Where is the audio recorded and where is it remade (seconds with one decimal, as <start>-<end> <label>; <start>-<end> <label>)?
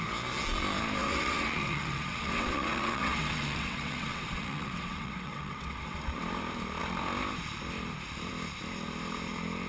0.0-1.0 recorded; 1.0-6.2 remade; 6.2-9.7 recorded